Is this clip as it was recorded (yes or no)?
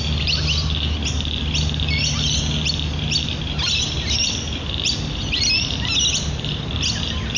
yes